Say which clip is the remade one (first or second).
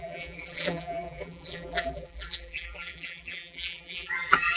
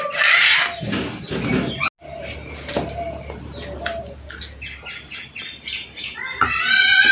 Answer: first